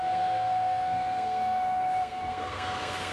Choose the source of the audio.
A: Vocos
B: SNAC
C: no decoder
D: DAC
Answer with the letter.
B